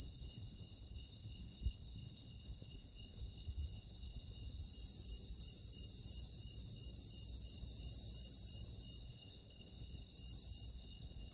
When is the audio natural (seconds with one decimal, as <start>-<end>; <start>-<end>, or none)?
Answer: 4.6-9.0; 10.1-10.7